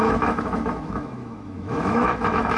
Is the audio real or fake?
fake